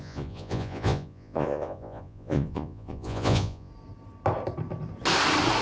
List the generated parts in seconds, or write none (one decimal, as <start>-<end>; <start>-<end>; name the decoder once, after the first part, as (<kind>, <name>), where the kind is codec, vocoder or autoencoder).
0.0-3.7 (vocoder, Vocos)